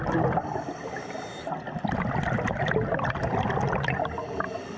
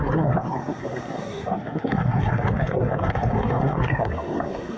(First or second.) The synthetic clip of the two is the second